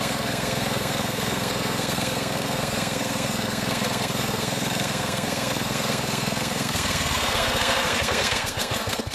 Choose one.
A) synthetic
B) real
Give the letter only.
A